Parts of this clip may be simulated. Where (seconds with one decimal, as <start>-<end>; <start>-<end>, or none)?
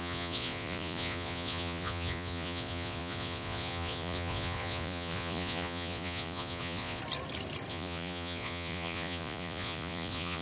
0.0-7.0; 7.7-10.4